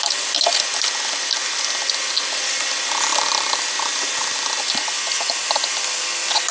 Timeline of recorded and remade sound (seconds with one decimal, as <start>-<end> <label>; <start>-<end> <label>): 0.0-6.5 recorded